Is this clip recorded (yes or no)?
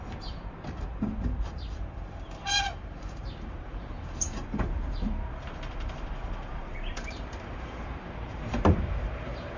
no